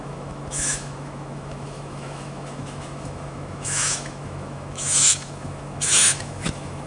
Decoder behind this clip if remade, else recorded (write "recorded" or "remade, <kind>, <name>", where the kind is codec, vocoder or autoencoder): remade, autoencoder, DAC-VAE